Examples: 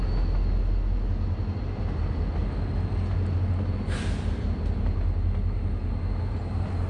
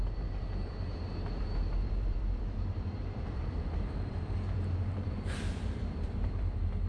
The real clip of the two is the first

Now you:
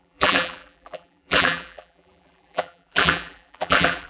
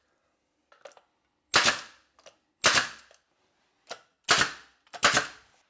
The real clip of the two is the second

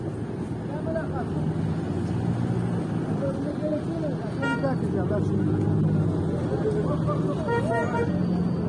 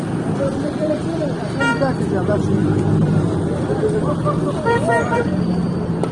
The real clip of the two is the first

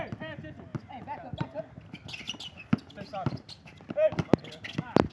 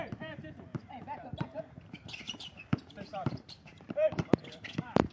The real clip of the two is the first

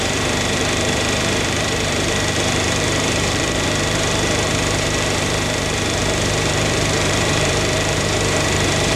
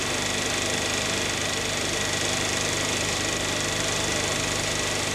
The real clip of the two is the second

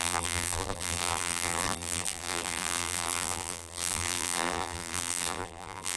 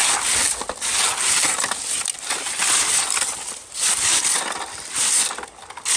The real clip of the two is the second